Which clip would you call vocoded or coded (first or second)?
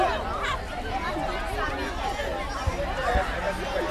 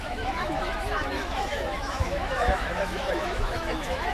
second